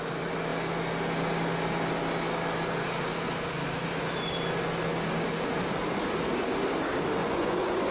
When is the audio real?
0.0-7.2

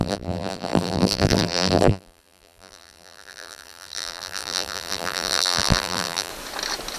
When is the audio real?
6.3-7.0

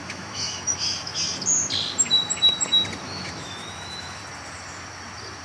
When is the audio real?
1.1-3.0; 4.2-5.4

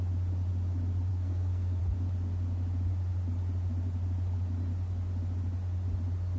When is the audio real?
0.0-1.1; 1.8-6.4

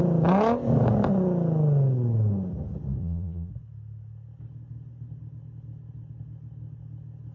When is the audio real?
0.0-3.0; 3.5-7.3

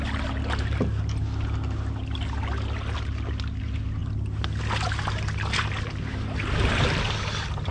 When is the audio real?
0.0-7.7

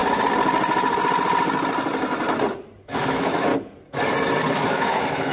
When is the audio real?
0.0-2.8; 3.5-4.5